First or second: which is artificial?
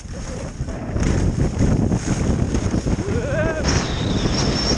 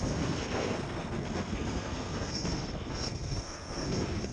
second